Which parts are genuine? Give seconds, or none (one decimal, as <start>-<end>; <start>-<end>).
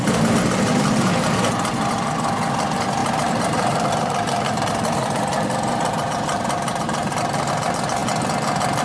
0.0-3.0; 7.5-8.8